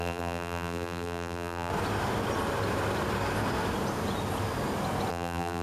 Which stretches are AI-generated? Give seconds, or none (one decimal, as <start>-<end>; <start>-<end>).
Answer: 0.0-1.7; 5.1-5.6